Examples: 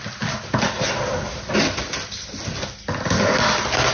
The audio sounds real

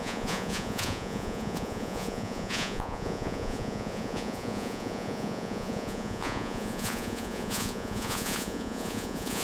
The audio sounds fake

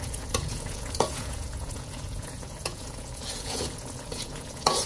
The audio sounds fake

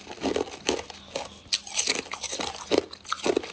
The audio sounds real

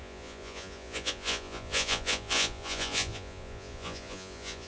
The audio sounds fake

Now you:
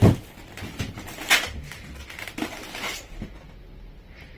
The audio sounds real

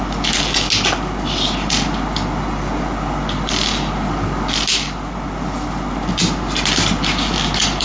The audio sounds real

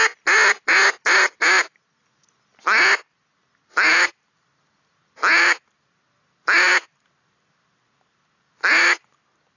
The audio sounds real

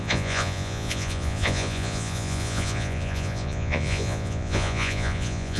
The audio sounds fake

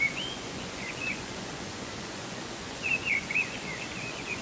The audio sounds fake